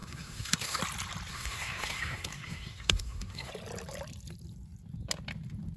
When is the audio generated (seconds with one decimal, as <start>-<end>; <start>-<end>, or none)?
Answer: 0.0-0.8; 1.3-3.5

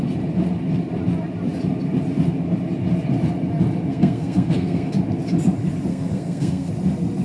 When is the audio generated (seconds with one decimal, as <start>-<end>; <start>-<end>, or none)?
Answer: 3.9-4.9; 5.9-6.7

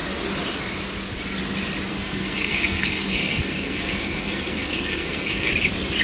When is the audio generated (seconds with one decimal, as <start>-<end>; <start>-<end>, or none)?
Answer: 1.9-5.5

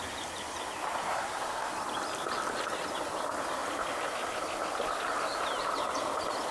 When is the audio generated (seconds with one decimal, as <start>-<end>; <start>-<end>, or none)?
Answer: 1.0-1.7

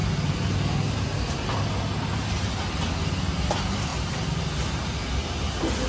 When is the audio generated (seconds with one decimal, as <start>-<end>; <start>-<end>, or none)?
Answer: none

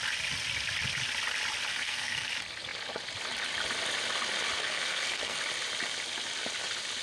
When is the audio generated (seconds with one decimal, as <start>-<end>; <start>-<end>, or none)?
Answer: 1.7-2.3; 4.6-5.4

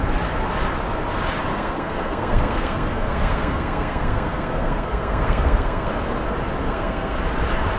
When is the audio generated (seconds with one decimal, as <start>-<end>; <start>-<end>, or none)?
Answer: 1.5-5.9; 6.6-7.2

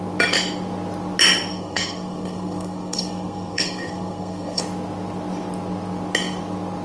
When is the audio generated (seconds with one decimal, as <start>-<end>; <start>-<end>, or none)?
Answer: 1.5-4.6